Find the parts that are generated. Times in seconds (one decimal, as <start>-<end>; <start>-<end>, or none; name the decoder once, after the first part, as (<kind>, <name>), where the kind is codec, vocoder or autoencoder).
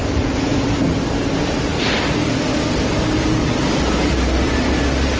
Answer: 1.7-4.8 (vocoder, BigVGAN v2)